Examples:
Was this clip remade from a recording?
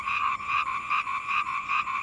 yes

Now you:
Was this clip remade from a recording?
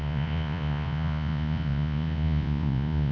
yes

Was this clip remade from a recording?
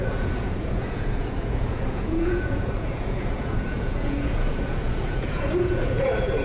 yes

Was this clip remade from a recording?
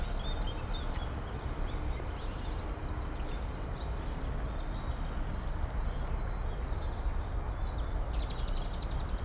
no